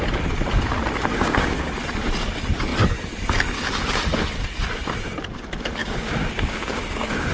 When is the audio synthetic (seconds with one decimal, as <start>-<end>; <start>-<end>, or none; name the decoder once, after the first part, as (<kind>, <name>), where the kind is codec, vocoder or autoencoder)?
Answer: 1.1-1.7 (codec, DAC); 5.8-7.3